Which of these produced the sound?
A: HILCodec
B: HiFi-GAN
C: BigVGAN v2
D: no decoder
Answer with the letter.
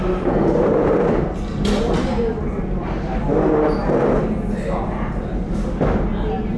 D